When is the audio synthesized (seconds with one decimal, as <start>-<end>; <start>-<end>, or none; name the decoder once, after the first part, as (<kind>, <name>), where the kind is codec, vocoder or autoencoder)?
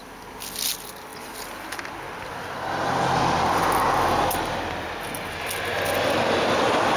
none